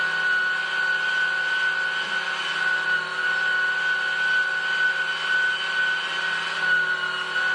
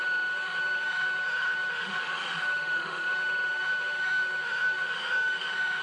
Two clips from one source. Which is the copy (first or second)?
second